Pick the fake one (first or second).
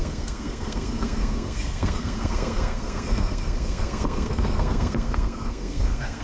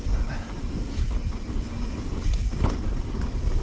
first